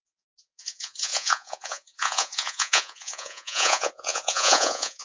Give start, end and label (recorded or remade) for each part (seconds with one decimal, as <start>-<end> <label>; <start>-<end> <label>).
0.0-5.0 remade